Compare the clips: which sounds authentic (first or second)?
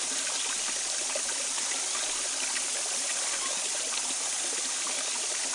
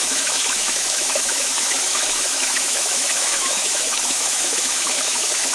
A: first